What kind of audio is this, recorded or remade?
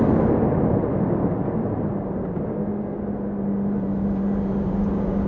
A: recorded